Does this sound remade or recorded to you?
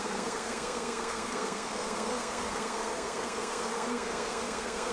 remade